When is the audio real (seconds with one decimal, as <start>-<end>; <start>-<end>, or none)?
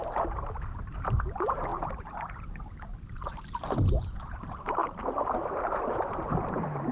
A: 0.0-0.9; 4.8-6.1